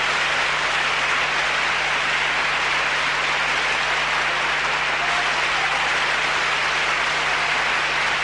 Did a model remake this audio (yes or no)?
no